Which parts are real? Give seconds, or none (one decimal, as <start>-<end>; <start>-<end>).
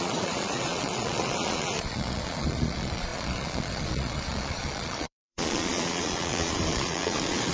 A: none